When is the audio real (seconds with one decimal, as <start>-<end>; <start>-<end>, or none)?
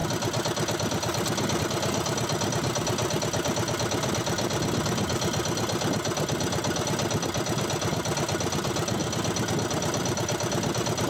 0.0-11.1